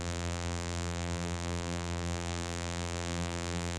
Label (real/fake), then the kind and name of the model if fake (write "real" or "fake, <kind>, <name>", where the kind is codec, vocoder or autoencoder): fake, vocoder, BigVGAN v2